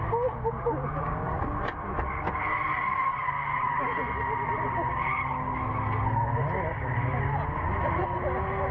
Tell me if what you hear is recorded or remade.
recorded